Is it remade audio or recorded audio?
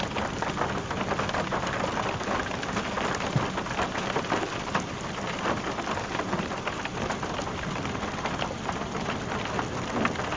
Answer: recorded